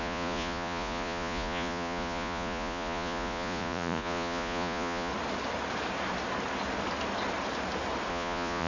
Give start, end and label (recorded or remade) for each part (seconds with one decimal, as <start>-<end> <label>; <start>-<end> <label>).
0.0-5.1 remade; 5.1-8.1 recorded; 8.1-8.7 remade